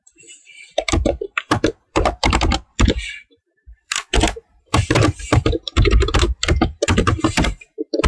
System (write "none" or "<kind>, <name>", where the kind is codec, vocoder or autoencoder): vocoder, BigVGAN v2